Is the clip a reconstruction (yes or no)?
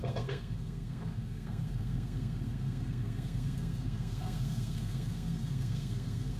yes